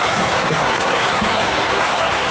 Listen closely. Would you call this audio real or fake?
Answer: fake